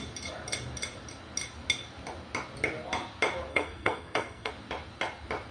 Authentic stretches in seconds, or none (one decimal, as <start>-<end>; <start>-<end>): 0.0-3.5; 4.5-5.5